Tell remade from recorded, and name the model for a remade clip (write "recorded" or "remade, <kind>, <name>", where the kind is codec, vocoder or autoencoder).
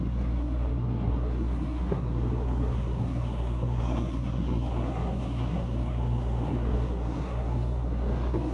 remade, codec, SNAC